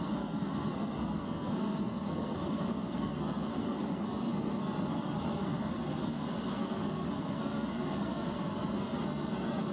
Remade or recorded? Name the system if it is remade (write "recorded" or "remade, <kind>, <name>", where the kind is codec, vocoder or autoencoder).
remade, codec, SNAC